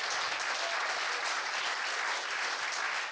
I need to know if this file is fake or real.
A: real